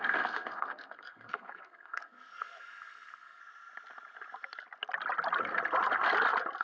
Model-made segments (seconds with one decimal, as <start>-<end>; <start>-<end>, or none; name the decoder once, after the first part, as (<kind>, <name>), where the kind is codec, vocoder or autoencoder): 0.0-3.4 (codec, SNAC)